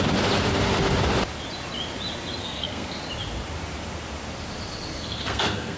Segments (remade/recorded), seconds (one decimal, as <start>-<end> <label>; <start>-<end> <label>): 0.0-2.4 recorded; 2.4-3.0 remade; 3.0-4.9 recorded; 4.9-5.8 remade